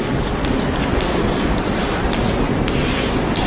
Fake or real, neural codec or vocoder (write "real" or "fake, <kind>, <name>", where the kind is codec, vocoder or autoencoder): real